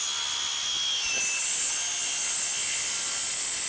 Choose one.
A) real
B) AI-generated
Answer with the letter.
A